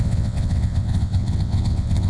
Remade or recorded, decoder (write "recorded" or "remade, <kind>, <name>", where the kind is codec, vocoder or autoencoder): remade, vocoder, WaveNeXt